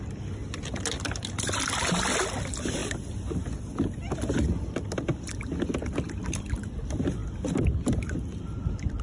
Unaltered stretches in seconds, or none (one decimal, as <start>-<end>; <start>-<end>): 0.0-9.0